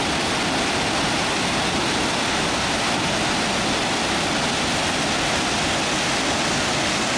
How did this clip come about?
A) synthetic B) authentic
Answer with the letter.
B